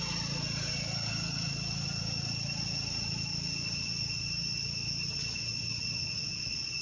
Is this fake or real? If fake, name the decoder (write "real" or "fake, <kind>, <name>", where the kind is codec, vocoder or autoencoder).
real